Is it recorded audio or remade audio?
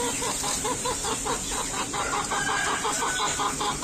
recorded